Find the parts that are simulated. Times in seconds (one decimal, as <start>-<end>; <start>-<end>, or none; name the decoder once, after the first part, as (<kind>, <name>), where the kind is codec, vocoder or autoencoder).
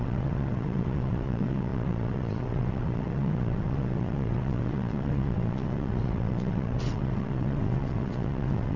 0.0-8.8 (vocoder, WaveNeXt)